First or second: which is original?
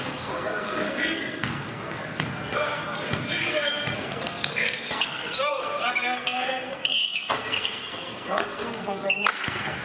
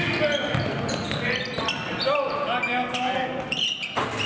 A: second